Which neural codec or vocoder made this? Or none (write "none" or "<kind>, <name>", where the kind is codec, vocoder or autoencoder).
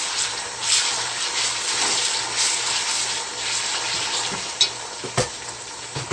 none